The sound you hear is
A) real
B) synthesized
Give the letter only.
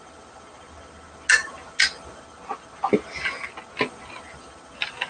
A